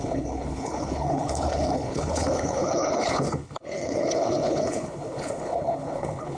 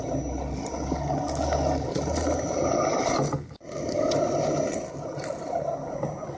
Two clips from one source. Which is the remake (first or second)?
first